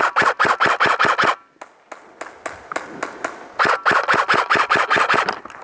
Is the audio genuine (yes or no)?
yes